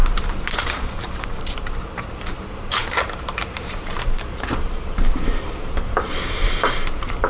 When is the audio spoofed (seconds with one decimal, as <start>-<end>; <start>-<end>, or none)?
0.0-7.3